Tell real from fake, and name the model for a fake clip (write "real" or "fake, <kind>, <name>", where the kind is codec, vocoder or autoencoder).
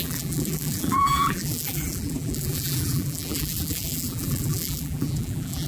fake, vocoder, BigVGAN v2